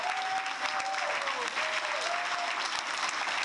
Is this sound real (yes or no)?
yes